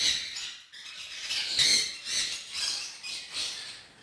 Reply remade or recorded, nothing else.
recorded